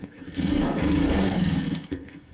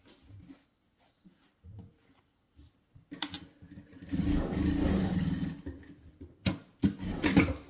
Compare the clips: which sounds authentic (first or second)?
second